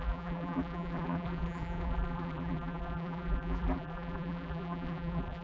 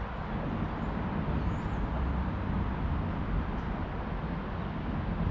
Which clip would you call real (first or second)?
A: second